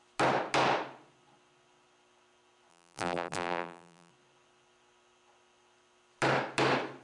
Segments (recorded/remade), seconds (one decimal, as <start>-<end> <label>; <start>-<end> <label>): 0.0-2.7 recorded; 2.7-4.1 remade; 4.1-7.0 recorded